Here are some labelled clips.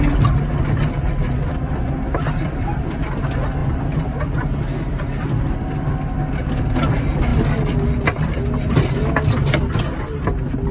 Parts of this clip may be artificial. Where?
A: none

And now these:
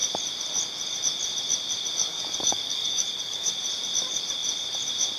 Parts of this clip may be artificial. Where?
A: 2.1-3.5

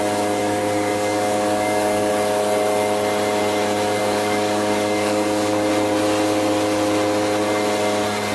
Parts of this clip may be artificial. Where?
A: 0.4-2.1; 4.0-5.7

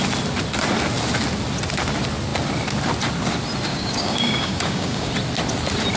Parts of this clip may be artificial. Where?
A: 3.7-5.1

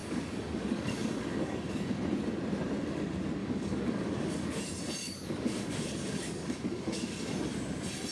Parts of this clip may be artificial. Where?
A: 0.0-1.8; 3.4-4.6; 5.0-7.2